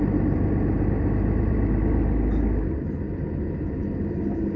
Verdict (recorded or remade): recorded